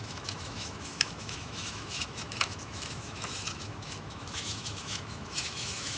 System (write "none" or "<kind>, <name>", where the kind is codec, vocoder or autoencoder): autoencoder, DAC-VAE